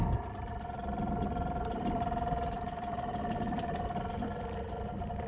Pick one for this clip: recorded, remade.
remade